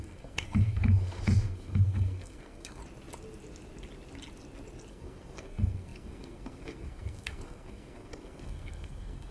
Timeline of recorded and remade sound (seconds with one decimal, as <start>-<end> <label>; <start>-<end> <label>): 0.0-2.8 remade; 2.8-4.9 recorded; 4.9-9.3 remade